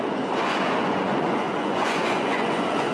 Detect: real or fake fake